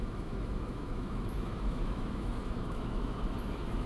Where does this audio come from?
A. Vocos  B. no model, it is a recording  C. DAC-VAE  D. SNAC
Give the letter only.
C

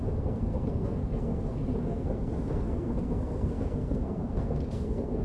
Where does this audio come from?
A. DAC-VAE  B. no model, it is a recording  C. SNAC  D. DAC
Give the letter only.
C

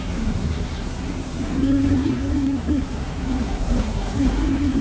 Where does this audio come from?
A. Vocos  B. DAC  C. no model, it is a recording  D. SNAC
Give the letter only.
D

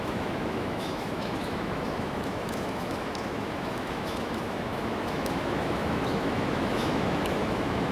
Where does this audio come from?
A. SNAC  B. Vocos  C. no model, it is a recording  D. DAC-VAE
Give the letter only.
D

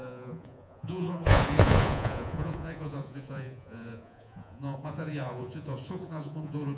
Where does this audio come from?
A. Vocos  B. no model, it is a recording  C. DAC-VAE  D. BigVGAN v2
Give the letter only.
A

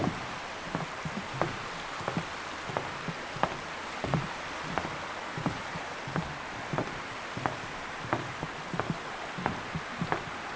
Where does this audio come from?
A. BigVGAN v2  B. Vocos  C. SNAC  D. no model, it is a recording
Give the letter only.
D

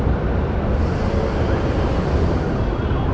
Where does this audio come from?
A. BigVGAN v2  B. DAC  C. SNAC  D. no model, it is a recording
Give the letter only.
D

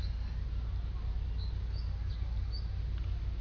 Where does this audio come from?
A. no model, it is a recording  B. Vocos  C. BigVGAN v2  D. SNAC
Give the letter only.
A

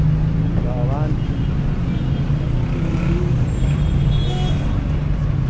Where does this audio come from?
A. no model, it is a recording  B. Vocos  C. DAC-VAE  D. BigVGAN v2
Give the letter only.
A